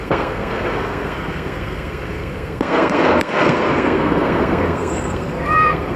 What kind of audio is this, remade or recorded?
remade